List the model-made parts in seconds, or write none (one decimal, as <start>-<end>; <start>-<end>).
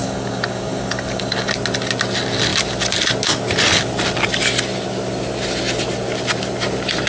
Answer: 0.0-1.5